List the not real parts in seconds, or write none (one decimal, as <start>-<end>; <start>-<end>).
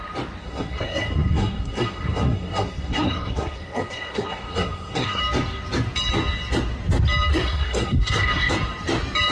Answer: 0.4-5.2; 7.3-8.5